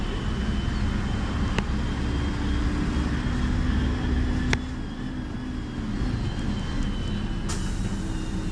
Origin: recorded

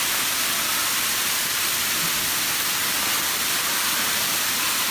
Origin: recorded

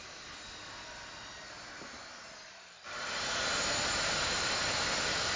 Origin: recorded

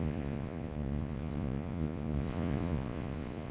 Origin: remade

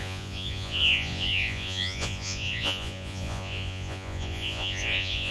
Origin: remade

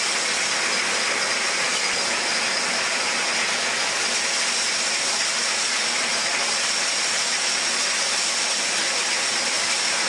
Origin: recorded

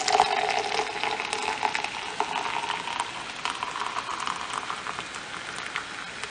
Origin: recorded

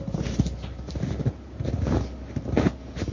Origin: recorded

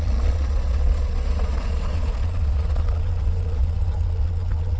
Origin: remade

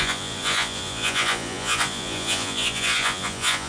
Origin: remade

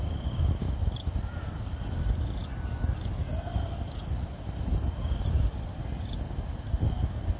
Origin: recorded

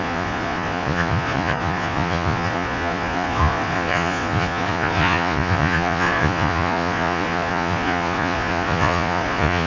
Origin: remade